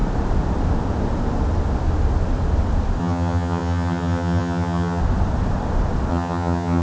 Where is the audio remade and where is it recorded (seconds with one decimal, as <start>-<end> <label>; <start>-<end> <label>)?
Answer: 0.0-3.0 recorded; 3.0-5.0 remade; 5.0-6.1 recorded; 6.1-6.8 remade